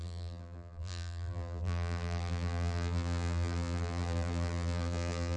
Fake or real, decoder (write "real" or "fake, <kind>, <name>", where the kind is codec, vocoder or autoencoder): fake, vocoder, BigVGAN v2